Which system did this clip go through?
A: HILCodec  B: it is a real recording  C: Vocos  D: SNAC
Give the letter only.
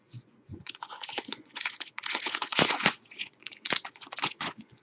C